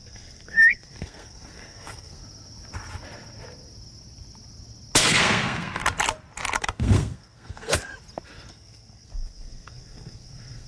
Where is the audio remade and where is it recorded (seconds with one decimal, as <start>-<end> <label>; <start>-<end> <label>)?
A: 0.0-2.2 remade; 2.2-5.0 recorded; 5.0-5.8 remade; 5.8-6.6 recorded; 6.6-7.9 remade; 7.9-8.5 recorded; 8.5-10.7 remade